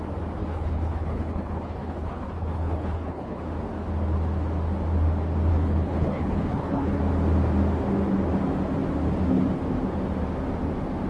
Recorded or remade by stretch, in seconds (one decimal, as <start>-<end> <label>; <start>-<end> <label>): 0.0-0.4 recorded; 0.4-3.4 remade; 3.4-5.5 recorded; 5.5-7.0 remade; 7.0-11.1 recorded